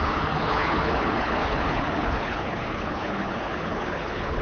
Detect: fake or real fake